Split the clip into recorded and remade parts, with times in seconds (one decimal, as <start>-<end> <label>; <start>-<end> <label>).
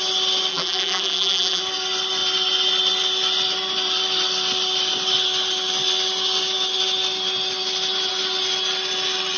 0.0-0.5 recorded; 0.5-1.6 remade; 1.6-9.4 recorded